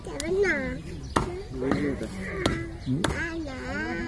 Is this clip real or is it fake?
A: real